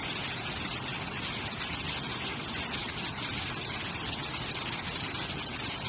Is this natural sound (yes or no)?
yes